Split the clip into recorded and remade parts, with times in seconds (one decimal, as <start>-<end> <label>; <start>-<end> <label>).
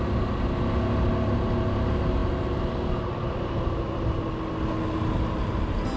0.0-6.0 recorded